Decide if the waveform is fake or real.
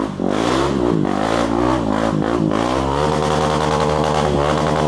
real